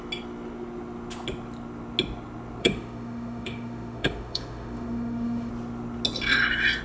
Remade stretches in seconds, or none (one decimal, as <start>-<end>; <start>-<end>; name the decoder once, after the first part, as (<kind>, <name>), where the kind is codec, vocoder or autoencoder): 2.6-5.5 (autoencoder, DAC-VAE)